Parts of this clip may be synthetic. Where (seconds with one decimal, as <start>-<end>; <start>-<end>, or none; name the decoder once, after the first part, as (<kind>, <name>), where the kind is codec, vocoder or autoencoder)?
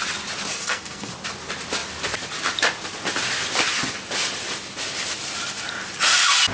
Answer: 0.5-1.1 (codec, SNAC)